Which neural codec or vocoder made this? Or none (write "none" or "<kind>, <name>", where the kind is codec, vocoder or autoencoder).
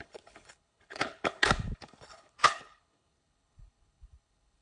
codec, HILCodec